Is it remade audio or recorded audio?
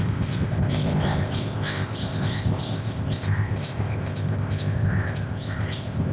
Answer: remade